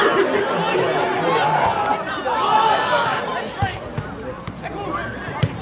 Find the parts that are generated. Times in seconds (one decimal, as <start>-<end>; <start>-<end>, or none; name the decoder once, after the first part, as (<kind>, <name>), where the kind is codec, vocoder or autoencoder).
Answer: 2.6-3.2 (codec, DAC)